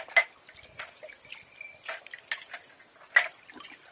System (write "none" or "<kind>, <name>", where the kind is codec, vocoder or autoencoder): none